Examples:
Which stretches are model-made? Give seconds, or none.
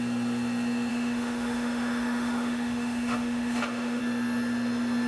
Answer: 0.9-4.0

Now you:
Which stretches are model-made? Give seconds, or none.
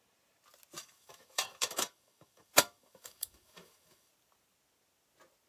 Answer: 0.8-4.1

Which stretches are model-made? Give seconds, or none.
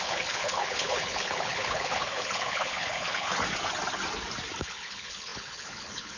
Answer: 0.0-3.3; 4.6-6.2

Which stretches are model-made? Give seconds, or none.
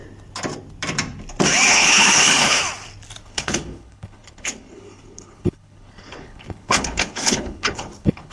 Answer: 1.7-2.6; 3.2-8.3